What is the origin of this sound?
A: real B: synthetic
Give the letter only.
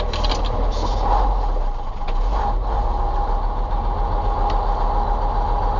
A